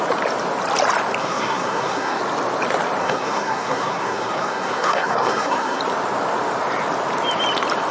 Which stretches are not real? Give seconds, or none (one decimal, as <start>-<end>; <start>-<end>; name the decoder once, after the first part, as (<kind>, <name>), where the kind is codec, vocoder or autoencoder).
1.2-2.2 (codec, SNAC); 3.0-5.8